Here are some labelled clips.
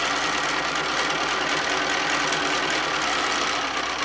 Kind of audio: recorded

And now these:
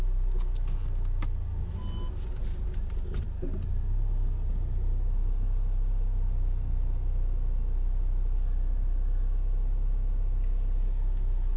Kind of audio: recorded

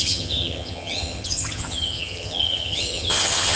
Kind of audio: remade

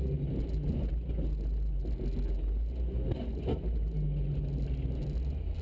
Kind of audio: recorded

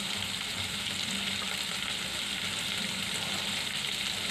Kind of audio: recorded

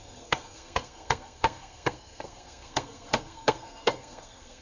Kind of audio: remade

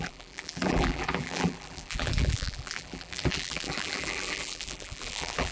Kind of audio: remade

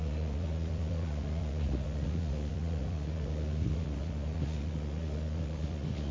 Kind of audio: remade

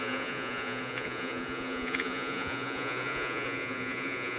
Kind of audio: remade